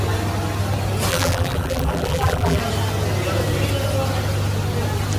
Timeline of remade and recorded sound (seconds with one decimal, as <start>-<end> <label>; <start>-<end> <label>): 0.0-1.1 recorded; 1.1-2.6 remade; 2.6-5.2 recorded